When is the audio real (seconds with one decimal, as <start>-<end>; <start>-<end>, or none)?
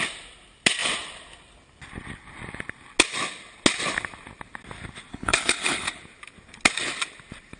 0.0-5.1; 6.0-7.6